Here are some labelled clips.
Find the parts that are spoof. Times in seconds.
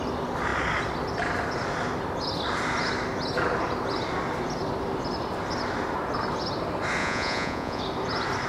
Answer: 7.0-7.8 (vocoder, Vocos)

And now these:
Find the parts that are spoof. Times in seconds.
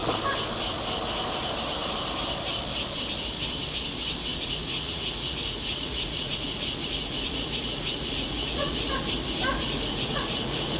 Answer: 4.3-8.9 (vocoder, Vocos); 9.6-10.8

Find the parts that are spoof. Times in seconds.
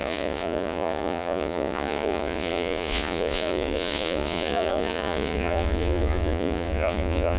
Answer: 0.0-7.4 (vocoder, Vocos)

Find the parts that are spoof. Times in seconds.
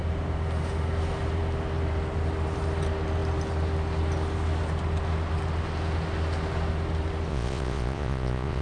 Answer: 7.3-8.6 (vocoder, Vocos)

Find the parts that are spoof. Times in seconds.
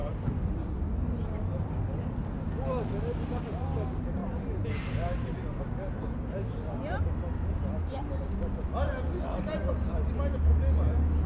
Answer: none